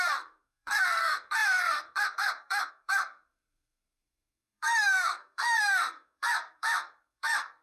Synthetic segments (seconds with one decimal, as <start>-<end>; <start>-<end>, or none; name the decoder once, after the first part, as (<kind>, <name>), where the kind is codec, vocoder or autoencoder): 0.0-7.6 (codec, SNAC)